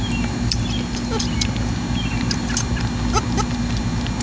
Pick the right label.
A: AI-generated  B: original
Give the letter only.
B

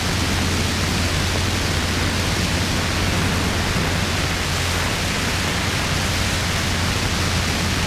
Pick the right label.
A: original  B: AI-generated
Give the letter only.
A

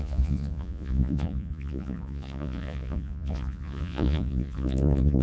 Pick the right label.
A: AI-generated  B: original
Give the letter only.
A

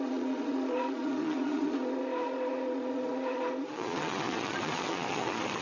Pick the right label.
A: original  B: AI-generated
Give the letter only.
B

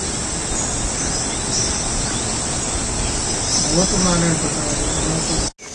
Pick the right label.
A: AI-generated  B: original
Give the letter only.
B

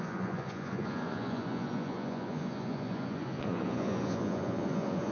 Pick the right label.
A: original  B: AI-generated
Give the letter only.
B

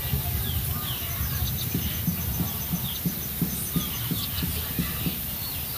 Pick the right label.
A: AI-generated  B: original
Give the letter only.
B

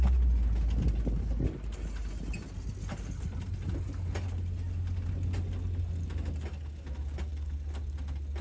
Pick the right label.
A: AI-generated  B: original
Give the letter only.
B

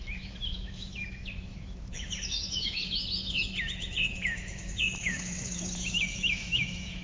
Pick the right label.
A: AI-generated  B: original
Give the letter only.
A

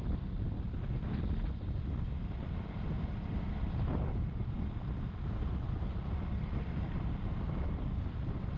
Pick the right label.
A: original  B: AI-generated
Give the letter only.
A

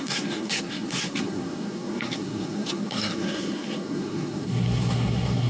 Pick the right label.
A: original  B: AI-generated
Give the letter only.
B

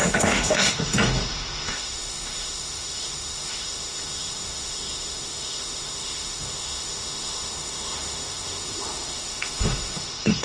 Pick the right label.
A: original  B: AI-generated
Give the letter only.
B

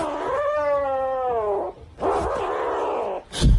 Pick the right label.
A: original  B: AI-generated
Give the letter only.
A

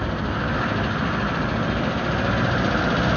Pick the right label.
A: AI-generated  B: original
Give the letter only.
B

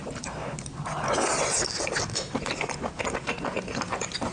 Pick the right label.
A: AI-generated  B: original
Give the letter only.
B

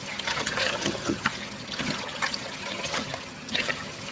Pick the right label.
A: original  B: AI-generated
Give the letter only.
B